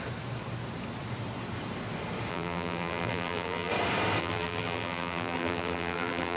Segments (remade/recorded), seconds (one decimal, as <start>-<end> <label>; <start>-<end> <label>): 0.0-2.3 recorded; 2.3-3.7 remade; 3.7-4.2 recorded; 4.2-6.4 remade